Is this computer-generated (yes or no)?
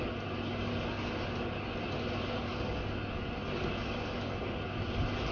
no